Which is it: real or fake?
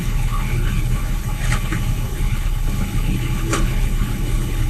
fake